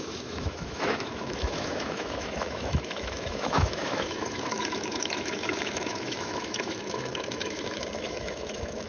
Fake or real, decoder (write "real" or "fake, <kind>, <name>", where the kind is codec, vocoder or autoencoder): fake, autoencoder, DAC-VAE